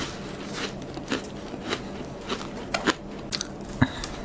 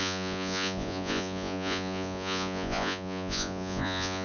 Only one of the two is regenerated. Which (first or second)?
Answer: second